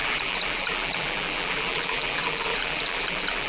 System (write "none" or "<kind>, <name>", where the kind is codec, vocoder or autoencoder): vocoder, BigVGAN v2